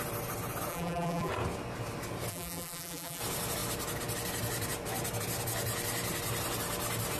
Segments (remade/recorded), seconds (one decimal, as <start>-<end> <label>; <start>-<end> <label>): 0.0-0.7 recorded; 0.7-1.3 remade; 1.3-2.3 recorded; 2.3-3.2 remade; 3.2-7.2 recorded